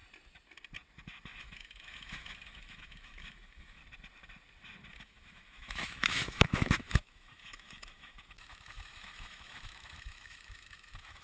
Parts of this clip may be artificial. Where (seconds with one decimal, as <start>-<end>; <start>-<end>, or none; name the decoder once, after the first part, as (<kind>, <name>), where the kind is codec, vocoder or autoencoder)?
1.4-3.8 (autoencoder, DAC-VAE); 4.9-11.2